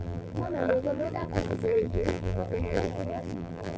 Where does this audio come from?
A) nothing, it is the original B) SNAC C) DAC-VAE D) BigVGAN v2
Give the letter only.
D